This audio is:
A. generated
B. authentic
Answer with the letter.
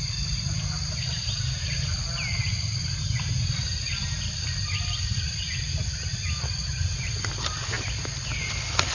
B